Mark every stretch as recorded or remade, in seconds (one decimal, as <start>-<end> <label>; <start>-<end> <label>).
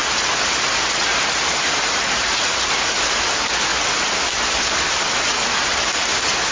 0.0-1.0 recorded; 1.0-3.7 remade; 3.7-4.7 recorded; 4.7-6.5 remade